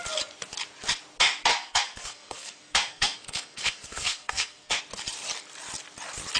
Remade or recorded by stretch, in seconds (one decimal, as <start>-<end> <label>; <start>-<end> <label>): 0.0-1.5 recorded; 1.5-4.8 remade; 4.8-6.4 recorded

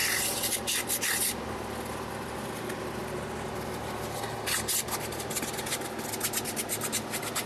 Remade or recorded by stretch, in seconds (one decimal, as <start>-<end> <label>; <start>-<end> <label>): 0.0-7.5 recorded

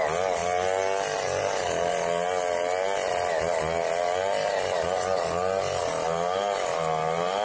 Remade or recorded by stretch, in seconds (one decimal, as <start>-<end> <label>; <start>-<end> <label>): 0.0-7.4 recorded

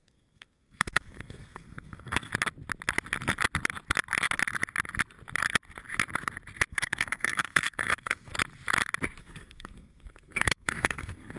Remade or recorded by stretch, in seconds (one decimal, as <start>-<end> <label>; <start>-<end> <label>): 0.0-2.3 remade; 2.3-6.7 recorded; 6.7-8.3 remade; 8.3-9.2 recorded; 9.2-11.4 remade

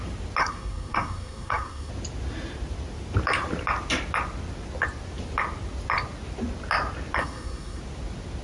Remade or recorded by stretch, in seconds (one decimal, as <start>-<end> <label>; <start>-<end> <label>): 0.0-0.4 recorded; 0.4-1.9 remade; 1.9-7.2 recorded; 7.2-7.8 remade; 7.8-8.4 recorded

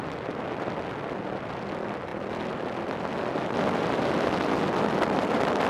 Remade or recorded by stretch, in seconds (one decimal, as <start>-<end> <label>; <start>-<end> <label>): 0.0-5.7 recorded

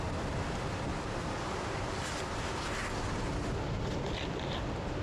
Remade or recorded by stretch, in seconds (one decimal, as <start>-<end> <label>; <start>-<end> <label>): 0.0-5.0 recorded